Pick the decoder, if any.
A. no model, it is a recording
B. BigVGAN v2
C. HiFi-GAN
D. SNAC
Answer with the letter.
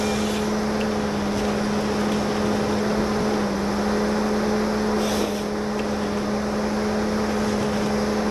A